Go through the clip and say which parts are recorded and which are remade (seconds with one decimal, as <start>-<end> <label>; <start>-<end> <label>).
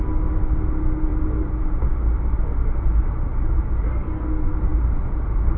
0.0-5.6 recorded